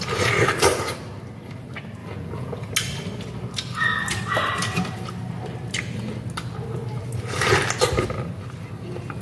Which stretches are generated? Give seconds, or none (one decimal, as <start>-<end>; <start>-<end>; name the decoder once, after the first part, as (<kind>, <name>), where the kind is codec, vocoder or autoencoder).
2.0-2.7 (vocoder, Vocos)

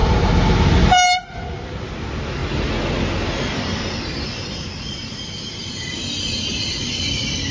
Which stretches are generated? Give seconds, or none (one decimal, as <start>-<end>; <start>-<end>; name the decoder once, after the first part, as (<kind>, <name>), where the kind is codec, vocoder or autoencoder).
none